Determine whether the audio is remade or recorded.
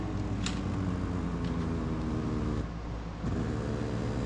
recorded